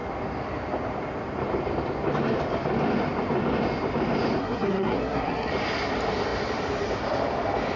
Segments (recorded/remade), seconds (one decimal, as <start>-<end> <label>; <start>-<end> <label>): 0.0-4.4 recorded; 4.4-5.5 remade; 5.5-7.8 recorded